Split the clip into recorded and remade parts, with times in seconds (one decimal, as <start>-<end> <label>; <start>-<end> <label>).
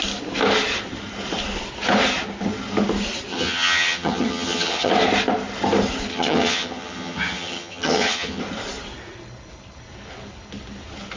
0.0-3.3 recorded; 3.3-4.9 remade; 4.9-6.1 recorded; 6.1-8.4 remade; 8.4-11.2 recorded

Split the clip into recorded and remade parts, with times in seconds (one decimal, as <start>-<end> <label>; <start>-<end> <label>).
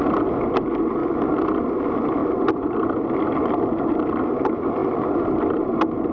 0.0-6.1 recorded